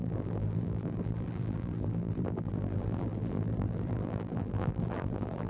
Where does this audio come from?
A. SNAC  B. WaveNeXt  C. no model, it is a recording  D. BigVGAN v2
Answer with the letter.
D